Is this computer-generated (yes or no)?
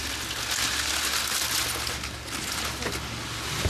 no